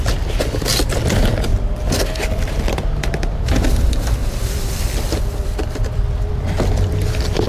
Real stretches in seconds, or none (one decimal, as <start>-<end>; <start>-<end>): 1.5-2.0